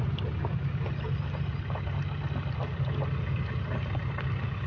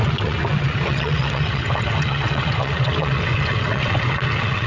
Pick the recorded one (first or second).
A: first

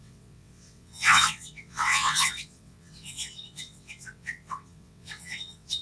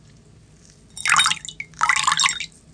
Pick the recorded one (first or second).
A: second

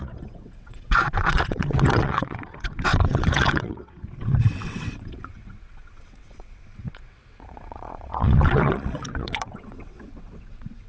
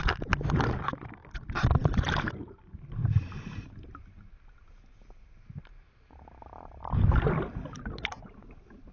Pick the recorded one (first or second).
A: second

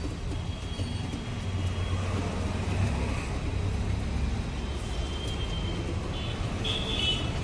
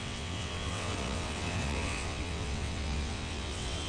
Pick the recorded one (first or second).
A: first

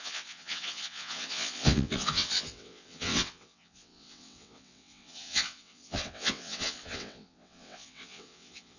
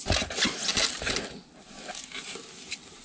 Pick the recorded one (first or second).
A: second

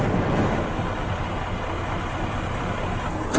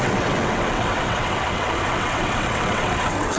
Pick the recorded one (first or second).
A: first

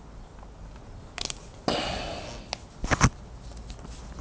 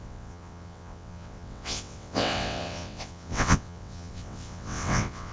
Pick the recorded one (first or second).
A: first